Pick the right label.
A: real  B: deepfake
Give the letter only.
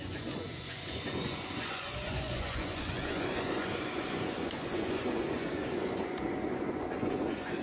B